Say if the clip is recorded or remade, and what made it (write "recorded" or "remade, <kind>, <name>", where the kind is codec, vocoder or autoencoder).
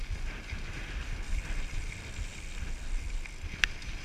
recorded